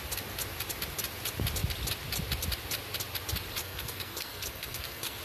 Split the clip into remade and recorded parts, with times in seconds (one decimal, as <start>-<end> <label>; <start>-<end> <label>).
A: 0.0-3.6 recorded; 3.6-5.2 remade